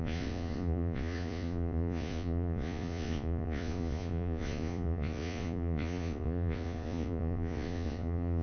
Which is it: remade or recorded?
remade